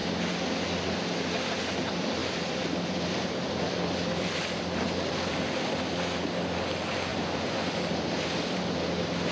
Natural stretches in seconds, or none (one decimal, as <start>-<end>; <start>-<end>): 0.0-2.2; 5.7-7.1; 8.6-9.3